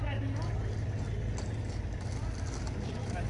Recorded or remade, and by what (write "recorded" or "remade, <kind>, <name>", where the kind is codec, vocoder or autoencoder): recorded